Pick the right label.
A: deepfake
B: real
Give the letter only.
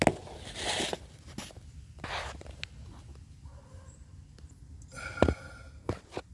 B